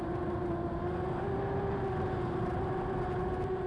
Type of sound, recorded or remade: recorded